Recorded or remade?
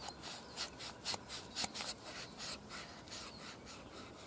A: recorded